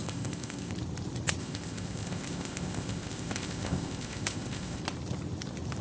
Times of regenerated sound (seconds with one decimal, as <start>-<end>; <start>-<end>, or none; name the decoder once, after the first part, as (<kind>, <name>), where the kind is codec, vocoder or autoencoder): 0.0-0.7 (codec, ZipCodec); 1.4-4.8